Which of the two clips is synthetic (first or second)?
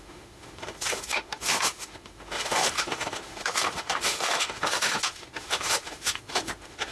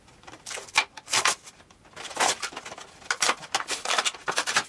first